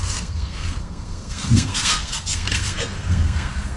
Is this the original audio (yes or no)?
no